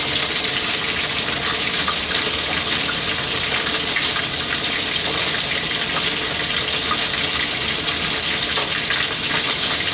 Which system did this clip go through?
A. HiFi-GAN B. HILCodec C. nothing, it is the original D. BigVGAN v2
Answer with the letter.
C